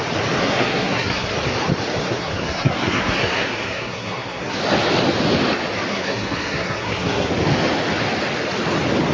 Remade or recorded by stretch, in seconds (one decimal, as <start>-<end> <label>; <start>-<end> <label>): 0.0-0.4 recorded; 0.4-1.3 remade; 1.3-2.0 recorded; 2.0-4.6 remade; 4.6-5.9 recorded; 5.9-7.3 remade; 7.3-9.1 recorded